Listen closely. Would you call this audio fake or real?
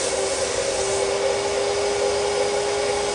real